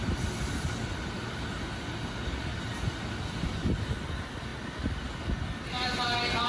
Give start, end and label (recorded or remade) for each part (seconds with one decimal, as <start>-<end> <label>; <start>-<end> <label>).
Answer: 0.0-6.5 recorded